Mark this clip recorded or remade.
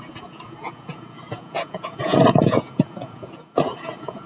remade